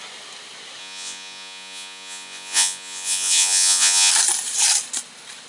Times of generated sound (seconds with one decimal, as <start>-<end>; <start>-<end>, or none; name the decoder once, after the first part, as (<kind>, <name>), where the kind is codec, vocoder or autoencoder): 0.8-4.1 (vocoder, Vocos)